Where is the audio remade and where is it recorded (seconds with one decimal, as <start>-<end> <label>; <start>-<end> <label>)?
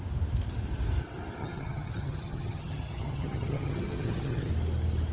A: 0.0-1.4 recorded; 1.4-4.5 remade; 4.5-5.1 recorded